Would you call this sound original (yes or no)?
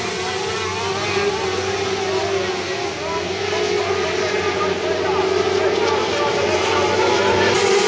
yes